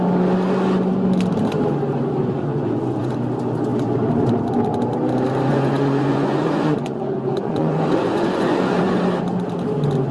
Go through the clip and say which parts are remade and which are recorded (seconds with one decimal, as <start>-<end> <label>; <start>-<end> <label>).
0.0-2.2 recorded; 2.2-3.1 remade; 3.1-5.5 recorded; 5.5-8.9 remade; 8.9-10.1 recorded